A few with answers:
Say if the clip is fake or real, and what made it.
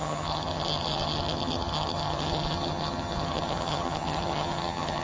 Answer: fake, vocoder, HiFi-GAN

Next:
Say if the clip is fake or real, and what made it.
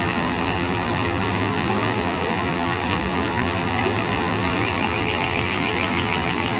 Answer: fake, vocoder, BigVGAN v2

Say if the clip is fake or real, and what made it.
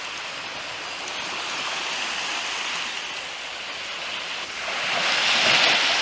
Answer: real